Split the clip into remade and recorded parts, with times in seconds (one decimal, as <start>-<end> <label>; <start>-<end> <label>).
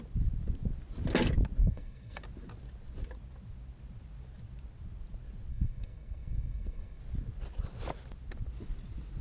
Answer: 0.0-1.6 recorded; 1.6-2.2 remade; 2.2-5.5 recorded; 5.5-7.0 remade; 7.0-9.2 recorded